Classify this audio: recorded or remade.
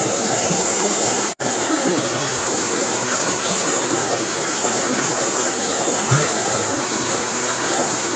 remade